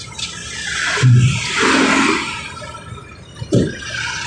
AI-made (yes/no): no